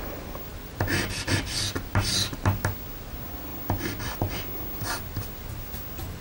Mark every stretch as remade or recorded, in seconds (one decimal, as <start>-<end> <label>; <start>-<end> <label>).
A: 0.0-6.2 recorded